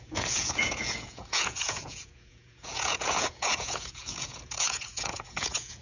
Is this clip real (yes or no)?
no